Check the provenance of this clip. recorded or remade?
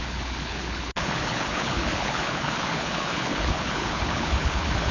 remade